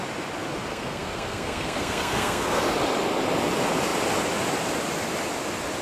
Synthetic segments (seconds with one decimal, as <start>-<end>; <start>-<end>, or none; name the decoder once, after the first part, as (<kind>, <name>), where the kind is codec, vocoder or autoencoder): 0.7-2.6 (codec, SNAC)